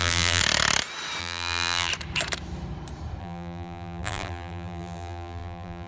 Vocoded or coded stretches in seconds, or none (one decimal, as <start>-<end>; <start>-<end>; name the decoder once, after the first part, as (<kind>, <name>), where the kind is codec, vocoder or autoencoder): 0.0-0.4 (vocoder, BigVGAN v2); 1.2-1.9; 3.2-5.9